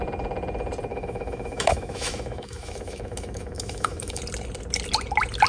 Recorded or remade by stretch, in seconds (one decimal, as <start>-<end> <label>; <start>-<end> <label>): 0.0-0.9 recorded; 0.9-4.2 remade; 4.2-5.5 recorded